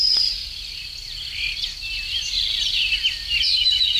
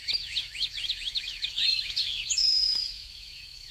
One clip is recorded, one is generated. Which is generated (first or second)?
second